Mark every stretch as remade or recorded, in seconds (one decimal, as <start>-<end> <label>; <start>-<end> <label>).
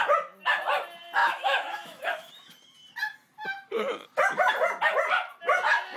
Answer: 0.0-1.2 recorded; 1.2-2.3 remade; 2.3-6.0 recorded